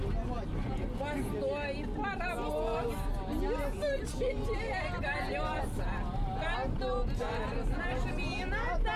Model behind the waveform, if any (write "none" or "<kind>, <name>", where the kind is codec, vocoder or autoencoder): none